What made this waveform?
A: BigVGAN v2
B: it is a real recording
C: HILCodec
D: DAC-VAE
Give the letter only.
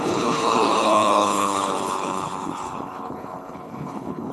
C